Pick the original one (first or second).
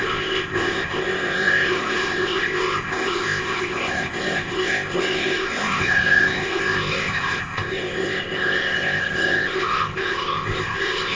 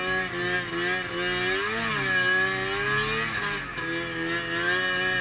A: second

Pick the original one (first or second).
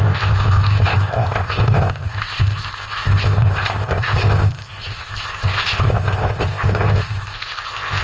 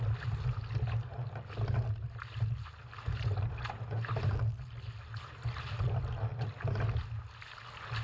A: second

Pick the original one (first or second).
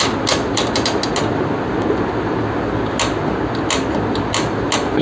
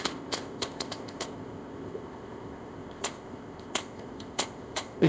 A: first